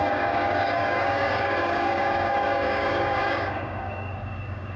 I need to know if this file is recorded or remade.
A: remade